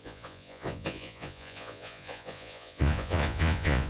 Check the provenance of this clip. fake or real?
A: fake